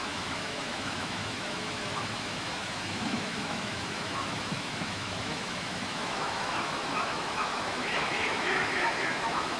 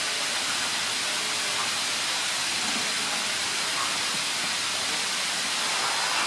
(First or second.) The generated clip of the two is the first